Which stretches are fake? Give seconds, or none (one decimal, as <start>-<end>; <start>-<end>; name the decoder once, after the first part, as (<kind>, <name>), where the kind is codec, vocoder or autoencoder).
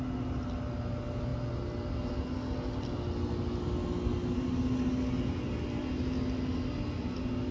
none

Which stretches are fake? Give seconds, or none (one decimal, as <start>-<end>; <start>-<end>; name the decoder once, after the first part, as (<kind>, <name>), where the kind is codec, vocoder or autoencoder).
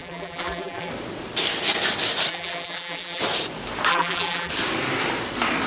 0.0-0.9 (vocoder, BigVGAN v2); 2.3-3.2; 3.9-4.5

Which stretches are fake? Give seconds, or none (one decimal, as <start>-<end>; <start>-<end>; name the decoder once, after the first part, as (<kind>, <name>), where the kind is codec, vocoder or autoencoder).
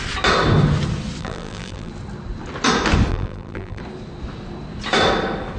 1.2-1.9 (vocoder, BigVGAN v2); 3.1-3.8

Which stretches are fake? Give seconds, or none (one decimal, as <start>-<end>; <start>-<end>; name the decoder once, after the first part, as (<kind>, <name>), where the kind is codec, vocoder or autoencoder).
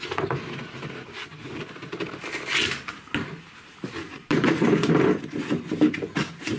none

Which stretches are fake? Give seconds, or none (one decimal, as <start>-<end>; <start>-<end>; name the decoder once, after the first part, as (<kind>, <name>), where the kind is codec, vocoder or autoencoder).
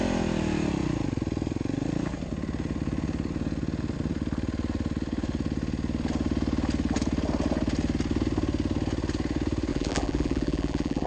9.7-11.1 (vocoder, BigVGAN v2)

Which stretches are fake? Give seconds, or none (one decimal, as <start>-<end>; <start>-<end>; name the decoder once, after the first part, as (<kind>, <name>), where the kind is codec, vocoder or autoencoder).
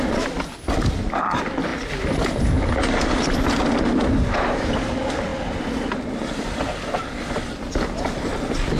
none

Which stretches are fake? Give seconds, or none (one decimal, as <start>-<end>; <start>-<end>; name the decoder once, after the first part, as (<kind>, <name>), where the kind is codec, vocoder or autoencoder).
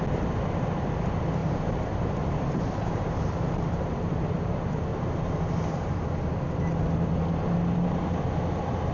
1.4-4.5 (vocoder, BigVGAN v2); 4.9-6.0